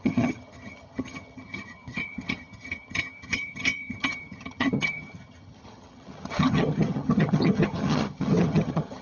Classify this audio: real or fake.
fake